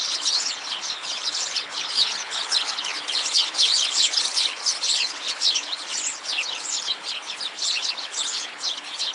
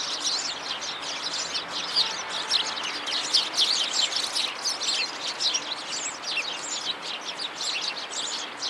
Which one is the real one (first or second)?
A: second